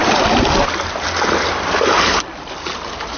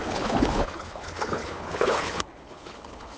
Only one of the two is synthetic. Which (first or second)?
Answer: second